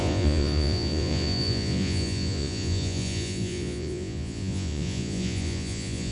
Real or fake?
fake